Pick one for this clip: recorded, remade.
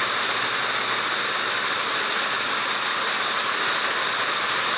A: recorded